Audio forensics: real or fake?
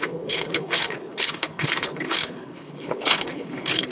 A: fake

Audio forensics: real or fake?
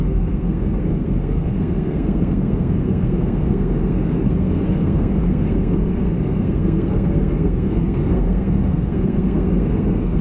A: fake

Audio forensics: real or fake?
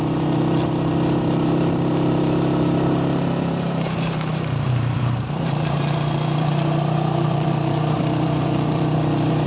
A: fake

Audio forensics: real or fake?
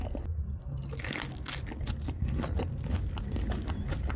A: real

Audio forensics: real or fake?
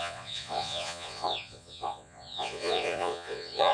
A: fake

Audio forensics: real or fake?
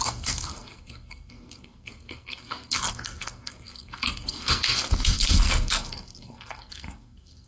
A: fake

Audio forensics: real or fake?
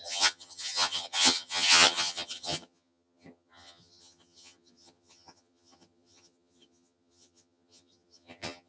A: fake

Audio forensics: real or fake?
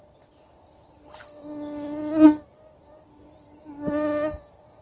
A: real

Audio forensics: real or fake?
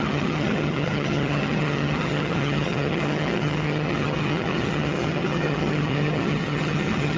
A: fake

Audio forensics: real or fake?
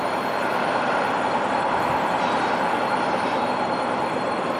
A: fake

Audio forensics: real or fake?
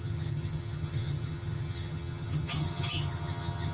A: fake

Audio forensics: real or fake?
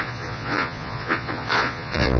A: fake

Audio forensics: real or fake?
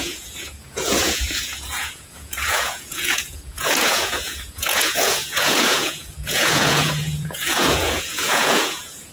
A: fake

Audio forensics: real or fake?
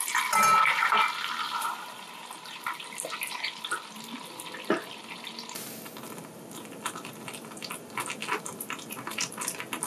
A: real